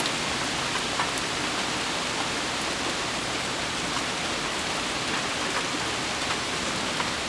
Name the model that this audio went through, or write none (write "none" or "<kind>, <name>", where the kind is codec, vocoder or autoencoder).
none